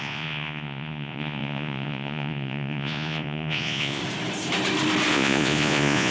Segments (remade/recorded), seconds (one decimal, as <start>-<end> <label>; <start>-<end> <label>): 0.0-4.0 remade; 4.0-5.1 recorded; 5.1-6.1 remade